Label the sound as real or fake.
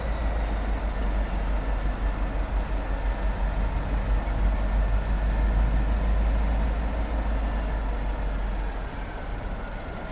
real